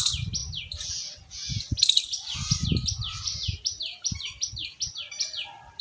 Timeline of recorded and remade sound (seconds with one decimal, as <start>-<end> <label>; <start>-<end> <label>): 0.0-5.8 recorded